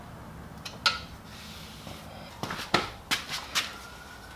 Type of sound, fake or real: real